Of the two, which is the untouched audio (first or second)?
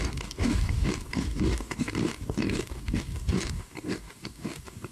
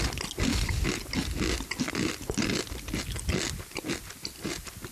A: second